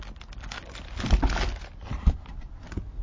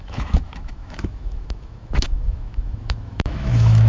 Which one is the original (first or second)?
first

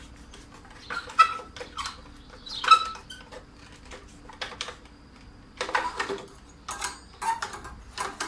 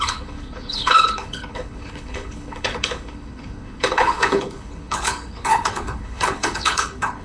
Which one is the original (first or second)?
first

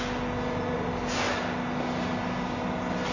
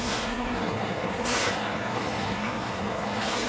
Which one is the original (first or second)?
first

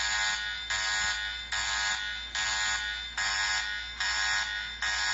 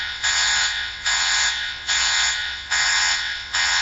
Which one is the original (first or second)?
first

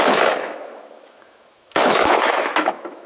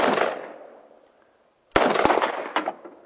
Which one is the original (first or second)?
second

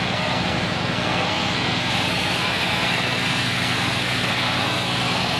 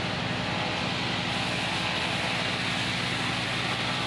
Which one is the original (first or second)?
second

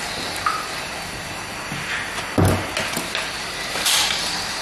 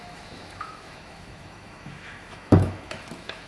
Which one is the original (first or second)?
first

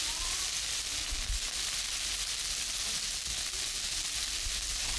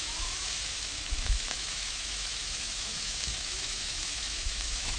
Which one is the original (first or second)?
first